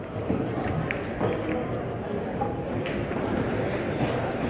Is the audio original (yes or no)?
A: yes